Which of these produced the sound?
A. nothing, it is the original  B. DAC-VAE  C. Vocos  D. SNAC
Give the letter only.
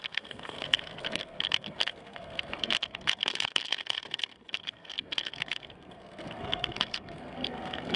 D